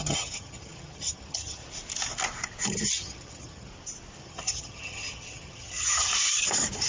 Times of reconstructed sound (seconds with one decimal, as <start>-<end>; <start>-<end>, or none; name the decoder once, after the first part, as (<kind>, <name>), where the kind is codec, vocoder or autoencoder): 0.0-1.6 (vocoder, HiFi-GAN); 2.9-3.7; 4.2-6.1